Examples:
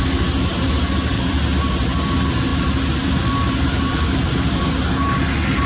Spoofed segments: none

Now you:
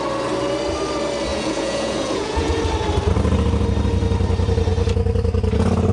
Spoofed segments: 1.3-2.6 (vocoder, Vocos)

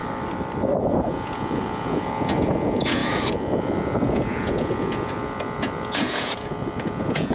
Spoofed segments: 0.8-7.3 (vocoder, Vocos)

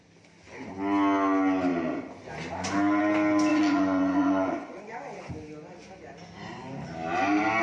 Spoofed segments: 3.5-5.3 (vocoder, Vocos)

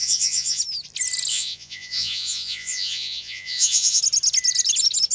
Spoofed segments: 0.0-0.6 (vocoder, Vocos); 1.3-4.0

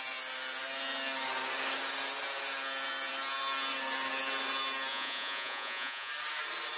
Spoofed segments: 4.9-6.1 (vocoder, Vocos)

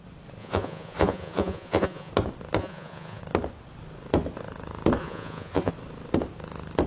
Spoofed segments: 0.4-2.1 (vocoder, Vocos); 2.6-3.2; 5.0-5.7

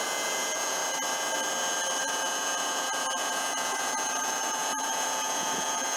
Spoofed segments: 0.0-0.8 (vocoder, Vocos); 2.0-6.0